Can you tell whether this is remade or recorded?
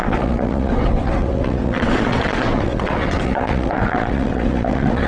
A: remade